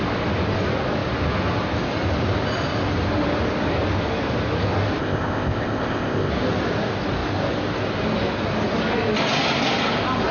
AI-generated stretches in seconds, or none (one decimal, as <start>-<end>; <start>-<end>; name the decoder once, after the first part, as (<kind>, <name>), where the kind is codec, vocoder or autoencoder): 5.0-6.3 (codec, ZipCodec)

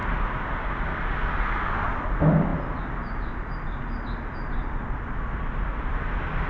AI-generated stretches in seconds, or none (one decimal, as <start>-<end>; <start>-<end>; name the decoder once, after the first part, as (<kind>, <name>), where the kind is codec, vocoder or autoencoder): none

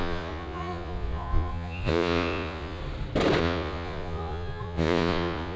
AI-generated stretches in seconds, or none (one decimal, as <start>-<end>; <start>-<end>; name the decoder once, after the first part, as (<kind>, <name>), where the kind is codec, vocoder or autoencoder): 0.0-2.8 (vocoder, Vocos); 3.4-5.6

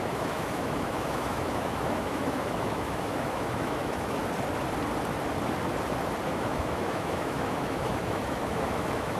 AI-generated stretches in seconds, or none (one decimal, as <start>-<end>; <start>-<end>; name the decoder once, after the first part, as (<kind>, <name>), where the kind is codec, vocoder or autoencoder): 0.0-4.2 (autoencoder, DAC-VAE); 6.3-9.2

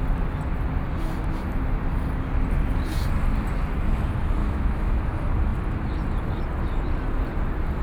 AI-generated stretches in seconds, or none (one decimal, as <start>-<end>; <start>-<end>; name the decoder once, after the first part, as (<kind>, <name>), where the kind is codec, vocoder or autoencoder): 4.4-5.0 (autoencoder, DAC-VAE)

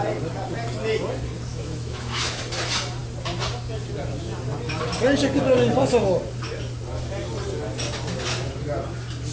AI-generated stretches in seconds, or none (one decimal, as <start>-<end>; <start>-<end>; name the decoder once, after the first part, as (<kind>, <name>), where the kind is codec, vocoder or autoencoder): 1.5-2.4 (autoencoder, DAC-VAE)

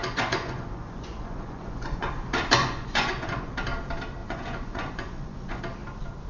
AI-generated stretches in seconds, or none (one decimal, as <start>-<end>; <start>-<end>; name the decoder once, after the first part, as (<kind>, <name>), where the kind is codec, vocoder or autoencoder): 0.0-2.1 (vocoder, Vocos); 2.6-3.5; 4.2-5.6